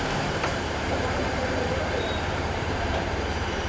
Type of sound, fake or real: fake